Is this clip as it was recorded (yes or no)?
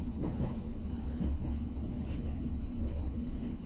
no